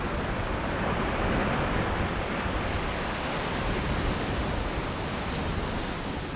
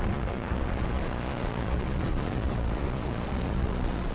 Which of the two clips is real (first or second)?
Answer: first